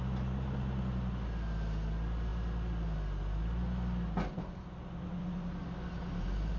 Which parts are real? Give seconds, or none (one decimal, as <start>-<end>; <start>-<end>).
0.0-6.6